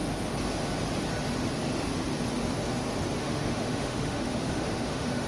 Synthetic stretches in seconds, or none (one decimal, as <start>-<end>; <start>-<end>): 3.2-5.3